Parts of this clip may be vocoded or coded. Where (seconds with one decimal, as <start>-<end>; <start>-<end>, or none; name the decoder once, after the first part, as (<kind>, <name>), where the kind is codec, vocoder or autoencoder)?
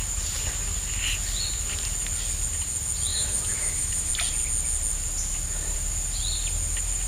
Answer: 3.1-4.1 (autoencoder, DAC-VAE)